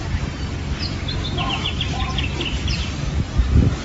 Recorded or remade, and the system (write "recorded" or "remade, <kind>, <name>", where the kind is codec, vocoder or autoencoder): remade, vocoder, BigVGAN v2